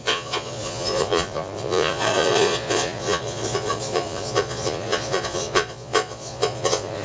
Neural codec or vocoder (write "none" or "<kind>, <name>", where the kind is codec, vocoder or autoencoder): vocoder, Vocos